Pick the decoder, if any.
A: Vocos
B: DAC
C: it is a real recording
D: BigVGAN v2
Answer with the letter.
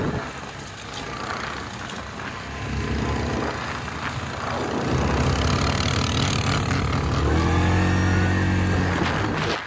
C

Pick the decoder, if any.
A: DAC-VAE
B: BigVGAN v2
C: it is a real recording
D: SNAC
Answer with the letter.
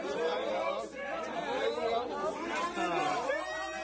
C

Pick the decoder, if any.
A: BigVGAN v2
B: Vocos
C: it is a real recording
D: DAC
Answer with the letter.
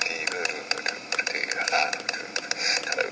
C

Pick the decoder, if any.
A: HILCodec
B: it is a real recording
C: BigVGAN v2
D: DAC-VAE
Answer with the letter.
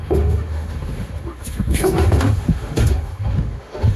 D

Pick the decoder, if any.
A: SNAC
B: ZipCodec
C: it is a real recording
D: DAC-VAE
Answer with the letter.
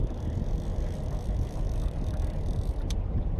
C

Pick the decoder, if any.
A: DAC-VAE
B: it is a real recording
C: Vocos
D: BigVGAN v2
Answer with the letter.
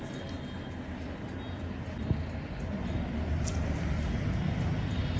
B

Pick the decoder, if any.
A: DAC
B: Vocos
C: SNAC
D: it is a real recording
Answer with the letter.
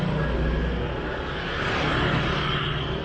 D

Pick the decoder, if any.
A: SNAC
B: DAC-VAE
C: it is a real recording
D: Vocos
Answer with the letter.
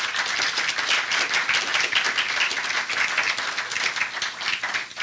C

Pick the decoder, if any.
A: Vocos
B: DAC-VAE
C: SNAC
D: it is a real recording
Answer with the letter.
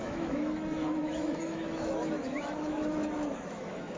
B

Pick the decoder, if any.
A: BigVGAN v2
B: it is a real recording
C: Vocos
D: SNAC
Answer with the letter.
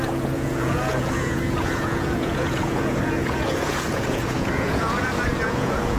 C